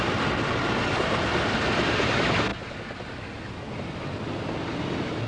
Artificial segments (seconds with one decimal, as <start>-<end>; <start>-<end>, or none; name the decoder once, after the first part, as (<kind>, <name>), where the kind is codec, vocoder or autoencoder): none